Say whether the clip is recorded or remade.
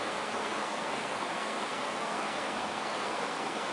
remade